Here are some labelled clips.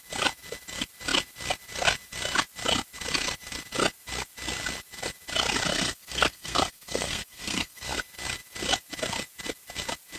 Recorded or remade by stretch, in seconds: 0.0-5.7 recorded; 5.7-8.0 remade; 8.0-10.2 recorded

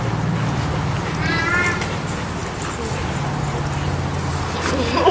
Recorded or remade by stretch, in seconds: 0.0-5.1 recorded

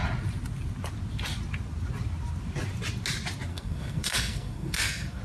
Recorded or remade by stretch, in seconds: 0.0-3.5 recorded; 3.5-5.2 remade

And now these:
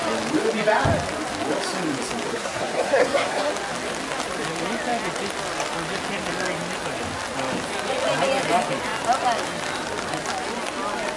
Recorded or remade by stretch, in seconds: 0.0-2.3 recorded; 2.3-3.5 remade; 3.5-11.2 recorded

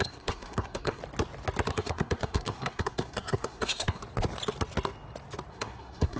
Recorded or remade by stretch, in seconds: 0.0-1.0 remade; 1.0-1.7 recorded; 1.7-4.0 remade; 4.0-5.5 recorded; 5.5-6.2 remade